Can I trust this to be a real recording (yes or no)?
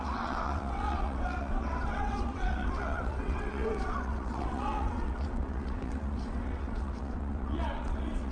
no